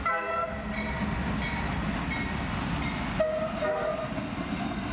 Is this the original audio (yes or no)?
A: yes